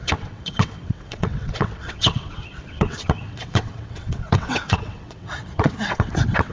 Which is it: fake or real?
fake